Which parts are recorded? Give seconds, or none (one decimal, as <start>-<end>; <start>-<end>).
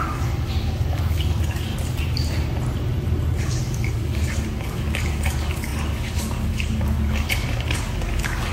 1.7-3.4